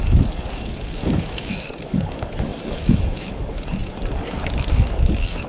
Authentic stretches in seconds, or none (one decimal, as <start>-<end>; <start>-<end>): none